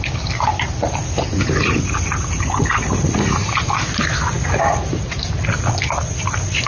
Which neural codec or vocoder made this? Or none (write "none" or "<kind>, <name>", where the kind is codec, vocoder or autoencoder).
none